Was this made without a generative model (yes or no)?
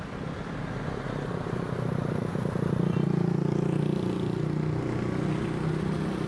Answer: yes